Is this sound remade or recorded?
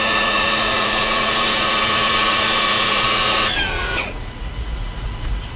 remade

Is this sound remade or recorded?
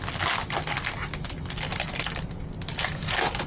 recorded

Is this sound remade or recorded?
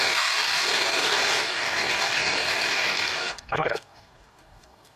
remade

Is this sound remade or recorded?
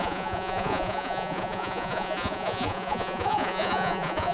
remade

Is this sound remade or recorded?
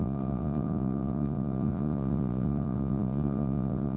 remade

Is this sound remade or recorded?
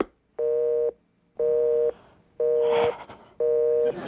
recorded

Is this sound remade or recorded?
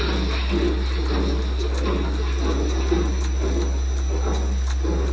recorded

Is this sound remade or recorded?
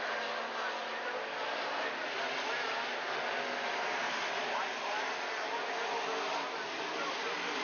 recorded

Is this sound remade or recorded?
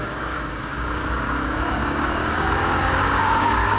remade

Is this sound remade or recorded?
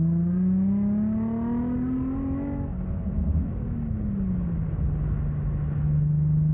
recorded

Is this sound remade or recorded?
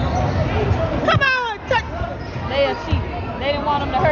recorded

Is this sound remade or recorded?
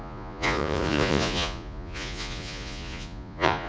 remade